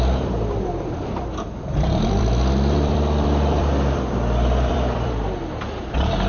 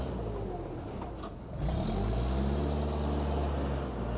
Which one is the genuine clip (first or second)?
second